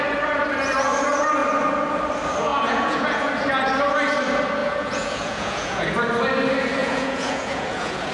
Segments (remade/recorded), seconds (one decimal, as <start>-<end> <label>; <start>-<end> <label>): 0.0-2.5 recorded; 2.5-3.3 remade; 3.3-4.6 recorded; 4.6-5.9 remade; 5.9-6.8 recorded; 6.8-8.1 remade